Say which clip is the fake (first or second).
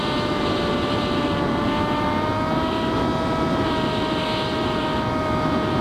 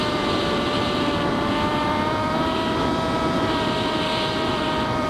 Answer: second